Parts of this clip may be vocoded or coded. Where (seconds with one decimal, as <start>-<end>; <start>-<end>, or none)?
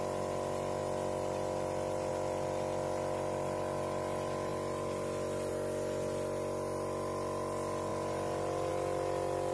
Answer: 0.8-2.1